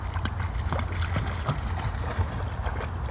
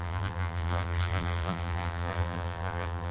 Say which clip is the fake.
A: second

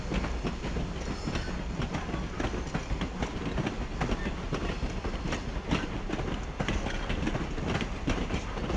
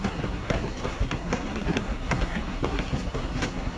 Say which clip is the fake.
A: second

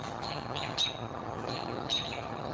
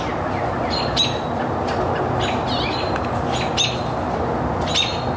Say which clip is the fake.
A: first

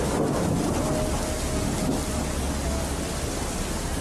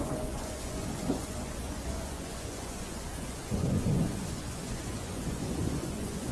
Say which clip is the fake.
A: second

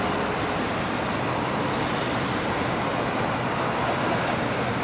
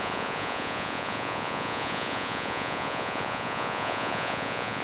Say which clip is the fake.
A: second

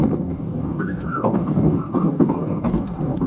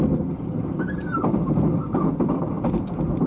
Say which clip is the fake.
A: first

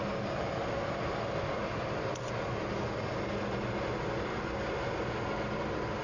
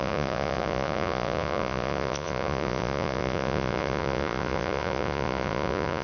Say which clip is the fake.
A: second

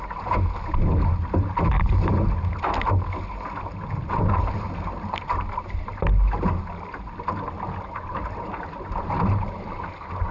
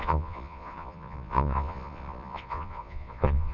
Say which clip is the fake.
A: second